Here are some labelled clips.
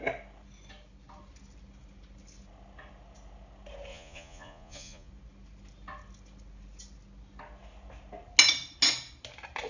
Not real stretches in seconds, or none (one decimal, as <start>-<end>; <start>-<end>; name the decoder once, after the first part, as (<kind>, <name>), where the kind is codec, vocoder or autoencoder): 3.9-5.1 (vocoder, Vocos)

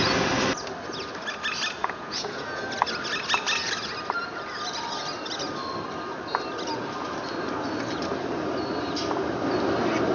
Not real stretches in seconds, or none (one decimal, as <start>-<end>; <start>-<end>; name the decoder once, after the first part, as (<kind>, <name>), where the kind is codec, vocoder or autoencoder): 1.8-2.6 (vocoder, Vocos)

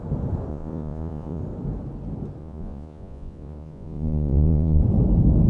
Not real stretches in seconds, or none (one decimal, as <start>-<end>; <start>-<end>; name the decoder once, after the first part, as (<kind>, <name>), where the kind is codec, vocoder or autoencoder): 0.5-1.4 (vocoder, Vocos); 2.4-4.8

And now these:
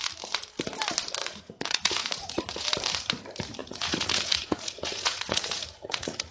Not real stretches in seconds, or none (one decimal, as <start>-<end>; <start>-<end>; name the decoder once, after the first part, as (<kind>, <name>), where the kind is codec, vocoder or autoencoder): 1.2-2.6 (vocoder, Vocos); 3.6-6.3

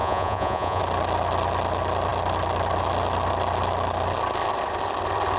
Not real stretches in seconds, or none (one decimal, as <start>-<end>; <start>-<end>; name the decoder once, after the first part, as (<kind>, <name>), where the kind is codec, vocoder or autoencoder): 0.0-0.8 (vocoder, Vocos)

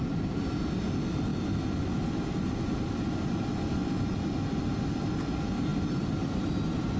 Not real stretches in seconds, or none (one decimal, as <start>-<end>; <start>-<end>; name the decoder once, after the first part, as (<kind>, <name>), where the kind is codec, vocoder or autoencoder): none

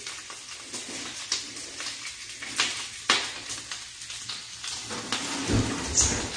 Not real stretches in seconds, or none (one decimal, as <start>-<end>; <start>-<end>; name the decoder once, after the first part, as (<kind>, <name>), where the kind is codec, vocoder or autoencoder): none

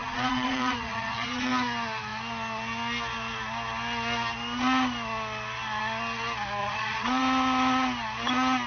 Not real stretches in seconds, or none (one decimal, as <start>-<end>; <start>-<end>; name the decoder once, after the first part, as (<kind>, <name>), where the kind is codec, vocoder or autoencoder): 0.0-1.5 (vocoder, Vocos); 6.6-7.2